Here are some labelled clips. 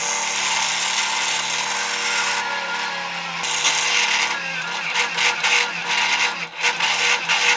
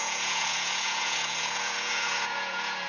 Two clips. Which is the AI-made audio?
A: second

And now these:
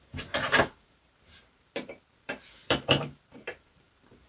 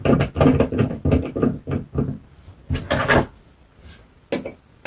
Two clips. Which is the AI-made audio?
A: first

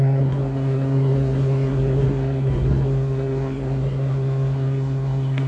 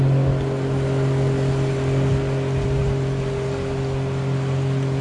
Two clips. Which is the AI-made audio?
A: first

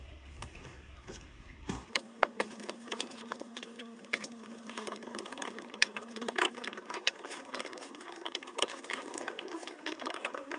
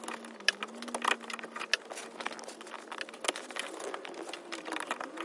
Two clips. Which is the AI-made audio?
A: first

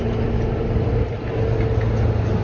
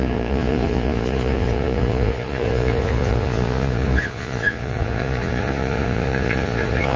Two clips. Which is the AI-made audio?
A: second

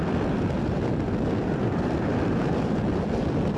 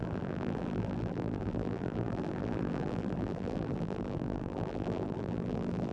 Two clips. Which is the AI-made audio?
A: second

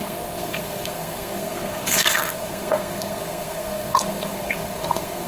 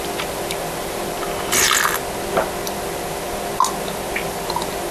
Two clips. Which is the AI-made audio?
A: first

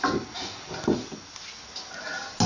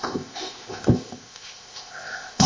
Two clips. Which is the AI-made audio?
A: second